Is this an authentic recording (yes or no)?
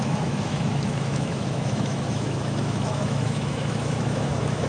no